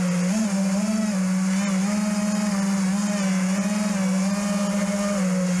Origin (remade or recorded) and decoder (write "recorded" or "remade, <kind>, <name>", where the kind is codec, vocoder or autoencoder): recorded